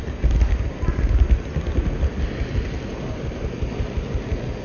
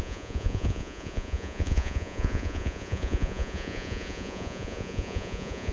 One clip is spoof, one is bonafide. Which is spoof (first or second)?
second